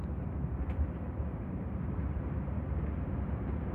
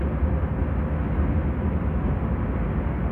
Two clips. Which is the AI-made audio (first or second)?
first